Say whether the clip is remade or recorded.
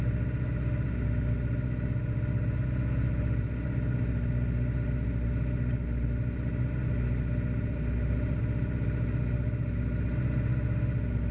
recorded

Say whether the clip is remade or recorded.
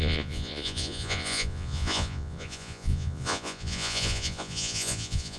remade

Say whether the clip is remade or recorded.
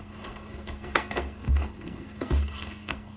remade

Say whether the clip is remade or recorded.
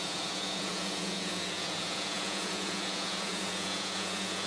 remade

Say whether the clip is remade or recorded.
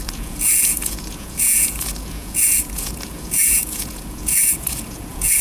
remade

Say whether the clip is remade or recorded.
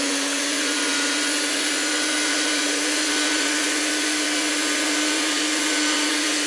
remade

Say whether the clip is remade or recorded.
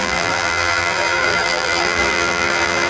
remade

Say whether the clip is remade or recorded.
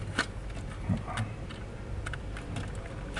recorded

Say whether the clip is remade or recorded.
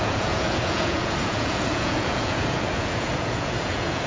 remade